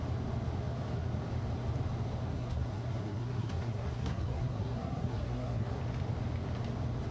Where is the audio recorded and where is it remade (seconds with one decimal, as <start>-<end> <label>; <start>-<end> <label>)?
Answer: 0.0-2.3 recorded; 2.3-5.8 remade; 5.8-7.1 recorded